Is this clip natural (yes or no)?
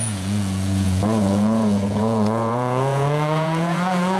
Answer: no